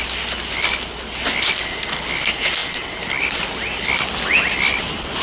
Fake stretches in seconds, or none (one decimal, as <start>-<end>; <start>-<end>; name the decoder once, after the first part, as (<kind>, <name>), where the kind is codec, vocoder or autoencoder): none